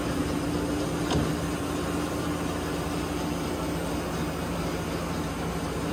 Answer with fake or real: real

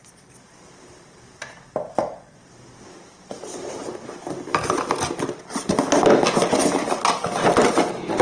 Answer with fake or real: real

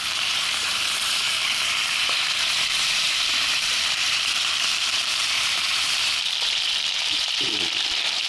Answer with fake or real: fake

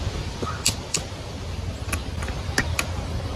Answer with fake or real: fake